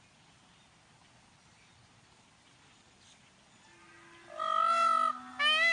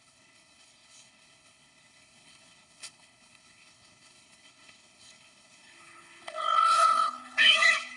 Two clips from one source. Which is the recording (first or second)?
first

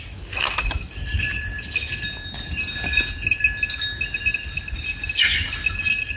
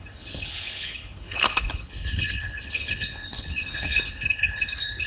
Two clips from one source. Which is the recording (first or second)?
first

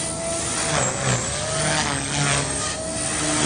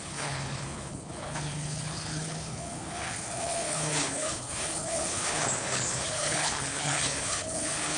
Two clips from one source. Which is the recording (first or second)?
first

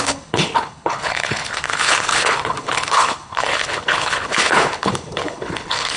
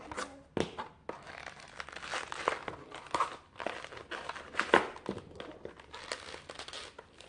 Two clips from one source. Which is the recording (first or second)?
second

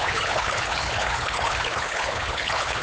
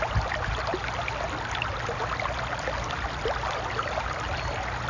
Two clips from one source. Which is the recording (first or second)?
second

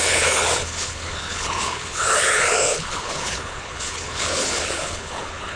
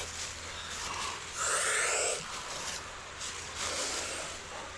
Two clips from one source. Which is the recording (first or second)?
second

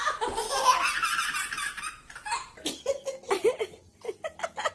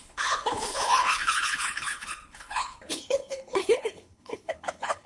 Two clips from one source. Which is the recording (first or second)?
first